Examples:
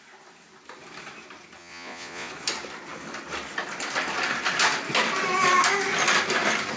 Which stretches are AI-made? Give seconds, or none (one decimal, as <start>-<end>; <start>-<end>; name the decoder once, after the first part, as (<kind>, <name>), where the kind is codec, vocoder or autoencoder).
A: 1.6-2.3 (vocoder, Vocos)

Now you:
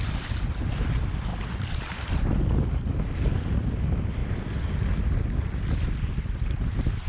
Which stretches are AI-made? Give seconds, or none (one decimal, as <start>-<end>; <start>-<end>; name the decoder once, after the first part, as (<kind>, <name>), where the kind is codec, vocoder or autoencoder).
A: 1.3-2.2 (vocoder, BigVGAN v2)

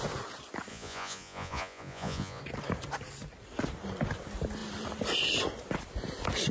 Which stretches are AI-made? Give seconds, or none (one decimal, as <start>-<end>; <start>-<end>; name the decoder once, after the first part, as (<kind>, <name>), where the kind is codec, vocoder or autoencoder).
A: 0.7-2.4 (vocoder, Vocos)